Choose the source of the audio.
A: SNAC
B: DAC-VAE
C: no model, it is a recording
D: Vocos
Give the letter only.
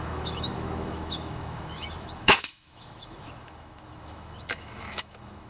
B